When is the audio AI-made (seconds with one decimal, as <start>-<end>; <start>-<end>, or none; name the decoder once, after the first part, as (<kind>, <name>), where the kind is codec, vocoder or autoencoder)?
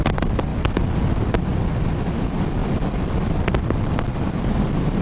none